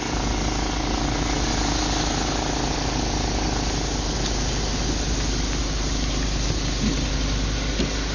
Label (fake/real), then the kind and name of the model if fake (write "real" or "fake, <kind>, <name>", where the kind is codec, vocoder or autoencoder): real